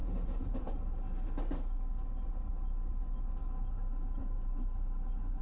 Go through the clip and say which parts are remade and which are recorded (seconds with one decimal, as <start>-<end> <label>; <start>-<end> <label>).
0.0-0.7 remade; 0.7-5.4 recorded